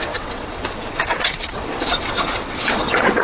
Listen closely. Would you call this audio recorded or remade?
remade